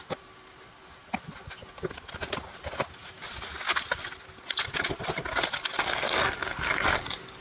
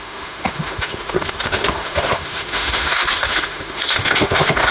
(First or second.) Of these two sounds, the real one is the first